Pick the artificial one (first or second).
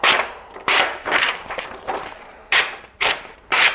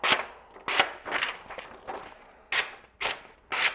first